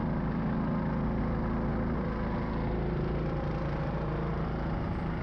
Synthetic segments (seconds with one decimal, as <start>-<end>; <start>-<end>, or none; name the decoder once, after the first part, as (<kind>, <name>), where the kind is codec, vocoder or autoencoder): none